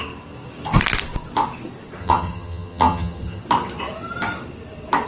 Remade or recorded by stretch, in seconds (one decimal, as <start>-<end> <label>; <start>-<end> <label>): 0.0-2.0 recorded; 2.0-3.4 remade; 3.4-5.1 recorded